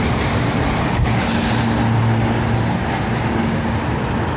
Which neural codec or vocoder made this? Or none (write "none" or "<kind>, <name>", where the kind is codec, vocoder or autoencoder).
none